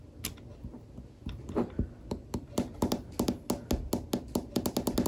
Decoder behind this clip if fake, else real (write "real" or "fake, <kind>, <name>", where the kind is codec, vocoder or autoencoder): real